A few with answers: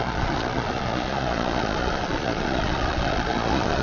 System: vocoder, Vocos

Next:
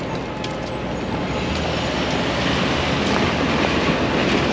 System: none